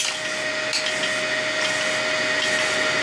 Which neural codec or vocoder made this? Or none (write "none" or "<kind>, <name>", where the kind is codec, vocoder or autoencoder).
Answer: none